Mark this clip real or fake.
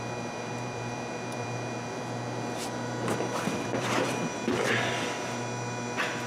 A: fake